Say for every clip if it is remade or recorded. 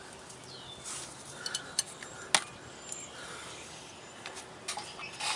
recorded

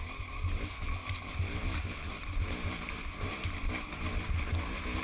recorded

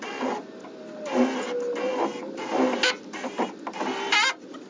recorded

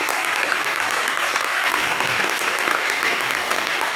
remade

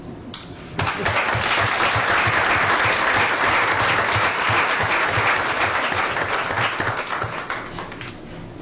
recorded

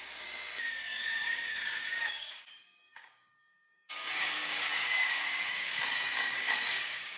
remade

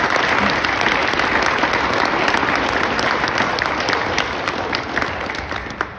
recorded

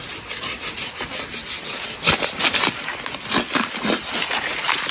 recorded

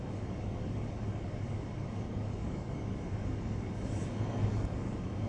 remade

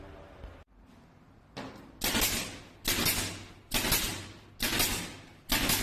recorded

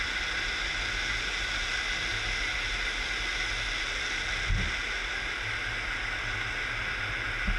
recorded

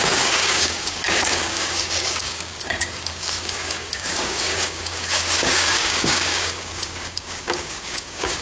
remade